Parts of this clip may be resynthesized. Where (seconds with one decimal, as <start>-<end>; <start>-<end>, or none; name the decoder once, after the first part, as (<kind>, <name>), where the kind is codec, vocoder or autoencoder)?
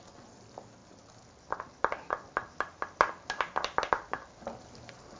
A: none